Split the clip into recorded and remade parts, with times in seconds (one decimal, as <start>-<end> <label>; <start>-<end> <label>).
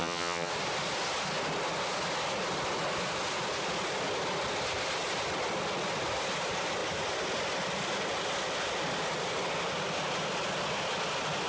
0.0-0.5 remade; 0.5-11.5 recorded